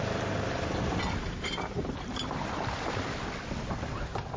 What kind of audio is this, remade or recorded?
recorded